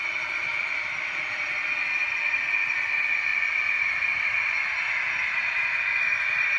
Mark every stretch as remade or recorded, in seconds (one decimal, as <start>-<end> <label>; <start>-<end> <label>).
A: 0.0-2.0 recorded; 2.0-2.5 remade; 2.5-3.3 recorded; 3.3-4.5 remade; 4.5-6.6 recorded